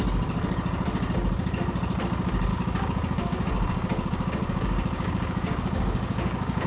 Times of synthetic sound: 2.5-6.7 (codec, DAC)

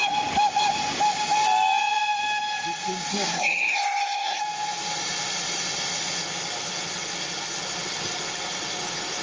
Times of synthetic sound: 3.1-4.4 (codec, SNAC)

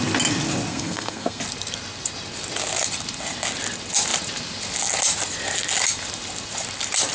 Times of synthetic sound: 0.7-1.4 (codec, SNAC)

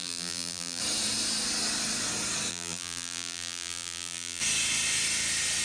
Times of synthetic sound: 0.0-0.8 (vocoder, BigVGAN v2); 2.5-4.4

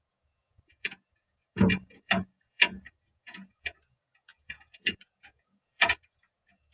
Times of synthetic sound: 0.0-6.7 (vocoder, Vocos)